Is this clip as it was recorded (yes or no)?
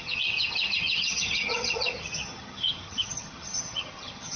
no